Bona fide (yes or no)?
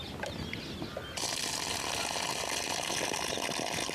yes